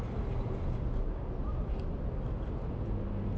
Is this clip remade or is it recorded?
recorded